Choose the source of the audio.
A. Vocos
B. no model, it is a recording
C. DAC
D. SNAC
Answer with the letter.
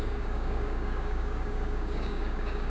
C